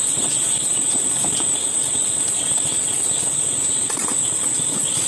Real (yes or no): no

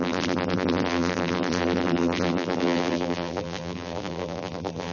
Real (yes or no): no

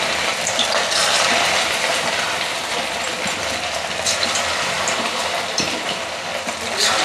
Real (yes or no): no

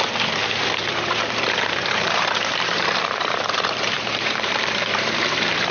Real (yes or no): no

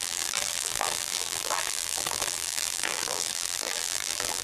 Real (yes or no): no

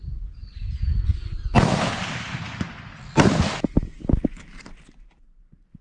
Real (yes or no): yes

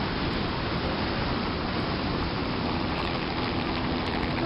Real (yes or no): no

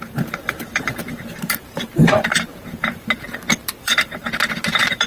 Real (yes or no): no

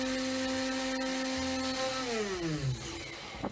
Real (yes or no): yes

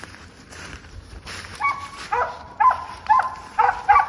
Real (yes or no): no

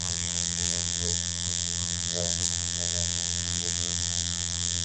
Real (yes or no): no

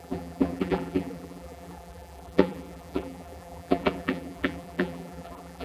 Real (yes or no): no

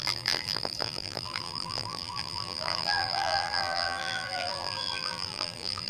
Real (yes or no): no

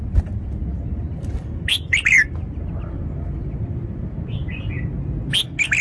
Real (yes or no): yes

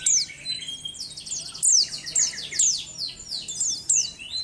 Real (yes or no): yes